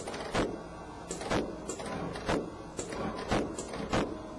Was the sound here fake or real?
real